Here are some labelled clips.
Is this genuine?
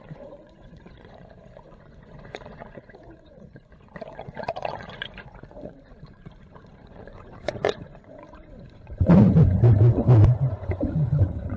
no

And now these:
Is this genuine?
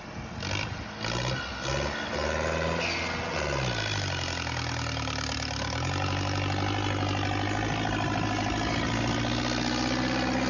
yes